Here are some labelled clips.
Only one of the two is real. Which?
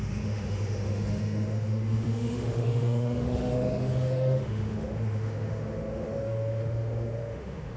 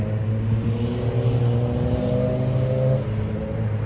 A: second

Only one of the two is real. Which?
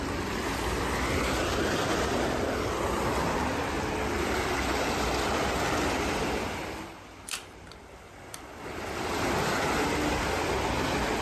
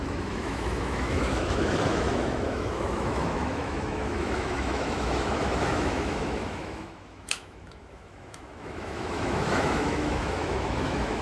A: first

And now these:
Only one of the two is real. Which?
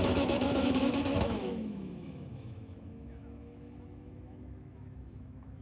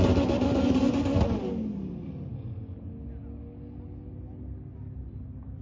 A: second